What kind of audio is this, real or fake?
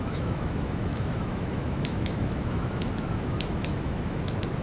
fake